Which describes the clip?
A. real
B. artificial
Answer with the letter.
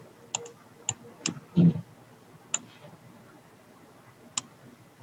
A